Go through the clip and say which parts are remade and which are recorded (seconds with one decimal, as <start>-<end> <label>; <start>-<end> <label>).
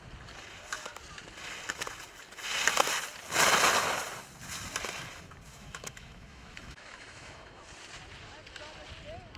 0.0-5.5 recorded; 5.5-7.6 remade; 7.6-9.4 recorded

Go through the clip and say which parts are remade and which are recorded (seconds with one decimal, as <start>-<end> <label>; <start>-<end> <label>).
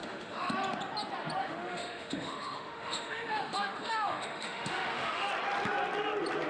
0.0-0.5 remade; 0.5-1.4 recorded; 1.4-5.3 remade; 5.3-6.5 recorded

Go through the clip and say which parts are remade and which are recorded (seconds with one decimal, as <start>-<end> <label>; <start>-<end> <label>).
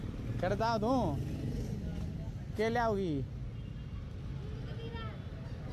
0.0-5.7 recorded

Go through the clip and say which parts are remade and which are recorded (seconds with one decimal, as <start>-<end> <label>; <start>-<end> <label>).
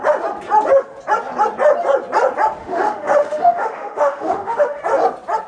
0.0-2.6 recorded; 2.6-4.8 remade; 4.8-5.5 recorded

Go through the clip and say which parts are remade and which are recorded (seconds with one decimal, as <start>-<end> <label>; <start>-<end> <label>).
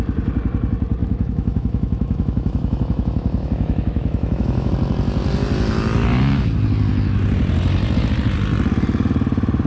0.0-1.0 recorded; 1.0-4.7 remade; 4.7-9.7 recorded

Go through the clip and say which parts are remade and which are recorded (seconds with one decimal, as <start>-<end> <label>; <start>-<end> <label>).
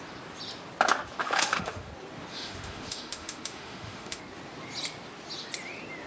0.0-1.2 recorded; 1.2-1.9 remade; 1.9-2.3 recorded; 2.3-4.2 remade; 4.2-6.1 recorded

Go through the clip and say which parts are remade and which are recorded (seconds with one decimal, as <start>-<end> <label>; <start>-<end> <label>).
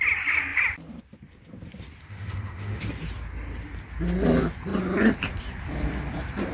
0.0-2.0 recorded; 2.0-2.9 remade; 2.9-6.5 recorded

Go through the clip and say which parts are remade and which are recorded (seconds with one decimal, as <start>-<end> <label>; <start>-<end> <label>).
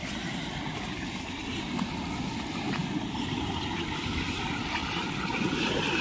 0.0-6.0 recorded